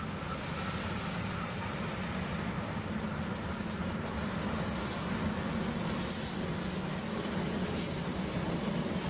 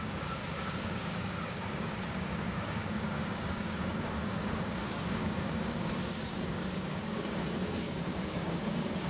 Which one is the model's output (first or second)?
second